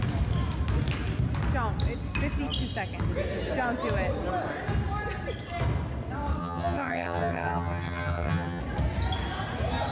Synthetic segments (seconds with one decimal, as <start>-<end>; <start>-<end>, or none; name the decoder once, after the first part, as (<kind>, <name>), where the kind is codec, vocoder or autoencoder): 6.4-8.6 (vocoder, HiFi-GAN)